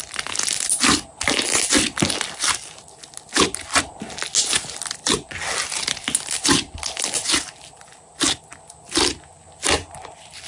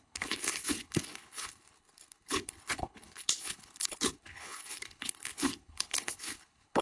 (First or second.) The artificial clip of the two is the second